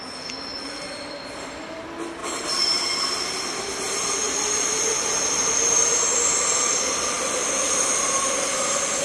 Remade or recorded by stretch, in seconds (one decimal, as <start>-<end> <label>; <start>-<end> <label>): 0.0-0.5 recorded; 0.5-1.8 remade; 1.8-2.2 recorded; 2.2-6.8 remade; 6.8-7.4 recorded; 7.4-9.0 remade